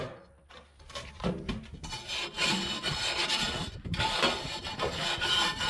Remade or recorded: recorded